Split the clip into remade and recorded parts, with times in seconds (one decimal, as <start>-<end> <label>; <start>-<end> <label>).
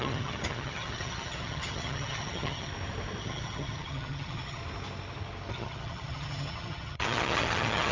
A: 0.0-2.7 remade; 2.7-3.2 recorded; 3.2-4.6 remade; 4.6-5.5 recorded; 5.5-7.9 remade